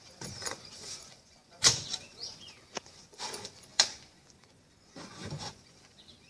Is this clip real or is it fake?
fake